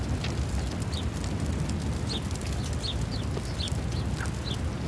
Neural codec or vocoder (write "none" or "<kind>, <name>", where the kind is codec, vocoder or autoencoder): none